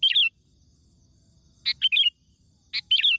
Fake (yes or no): no